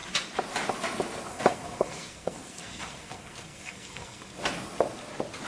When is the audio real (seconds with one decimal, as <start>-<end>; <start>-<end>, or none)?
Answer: 0.0-1.3; 4.4-5.5